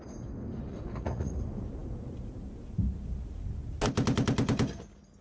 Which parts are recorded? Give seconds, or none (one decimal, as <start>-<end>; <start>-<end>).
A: 0.0-0.7; 1.4-5.2